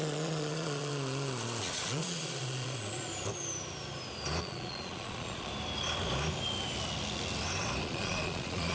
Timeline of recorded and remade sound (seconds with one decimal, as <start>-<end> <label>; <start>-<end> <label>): 0.0-0.9 remade; 0.9-1.6 recorded; 1.6-3.1 remade; 3.1-4.4 recorded; 4.4-5.5 remade; 5.5-7.8 recorded; 7.8-8.7 remade